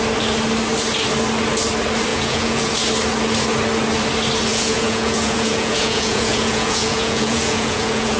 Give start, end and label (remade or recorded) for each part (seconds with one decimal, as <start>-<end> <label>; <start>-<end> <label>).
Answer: 0.0-2.1 recorded; 2.1-2.7 remade; 2.7-4.5 recorded; 4.5-8.2 remade